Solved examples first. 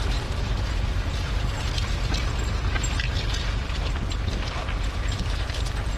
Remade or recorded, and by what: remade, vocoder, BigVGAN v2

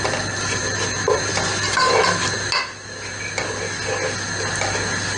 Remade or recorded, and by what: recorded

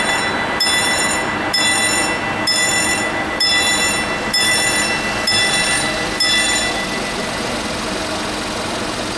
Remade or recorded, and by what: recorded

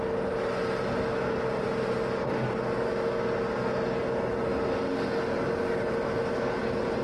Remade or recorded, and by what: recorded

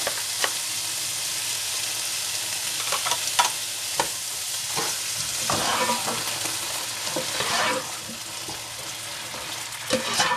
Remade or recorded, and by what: recorded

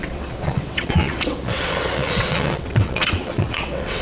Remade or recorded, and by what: remade, vocoder, WaveNeXt